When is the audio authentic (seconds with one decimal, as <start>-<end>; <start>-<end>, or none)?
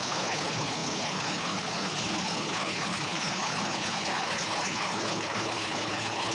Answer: none